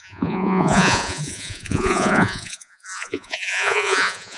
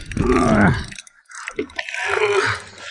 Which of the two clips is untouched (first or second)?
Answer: second